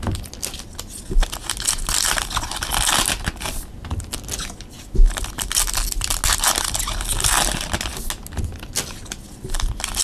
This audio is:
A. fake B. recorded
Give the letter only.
B